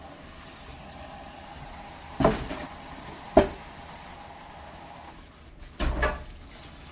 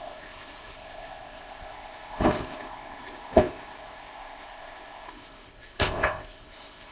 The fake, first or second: second